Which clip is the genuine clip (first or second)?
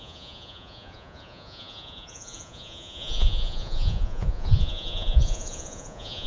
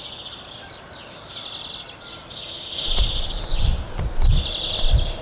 second